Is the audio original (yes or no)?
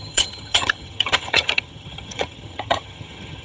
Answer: no